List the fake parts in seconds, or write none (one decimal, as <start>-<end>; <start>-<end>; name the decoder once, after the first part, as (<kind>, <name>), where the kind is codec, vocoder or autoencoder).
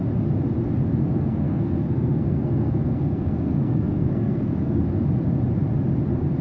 1.0-4.8 (codec, SNAC)